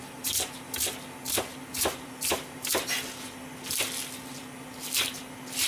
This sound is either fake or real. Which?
real